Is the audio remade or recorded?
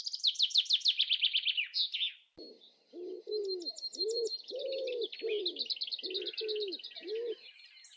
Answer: recorded